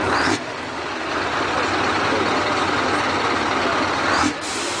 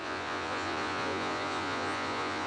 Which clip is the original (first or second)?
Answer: first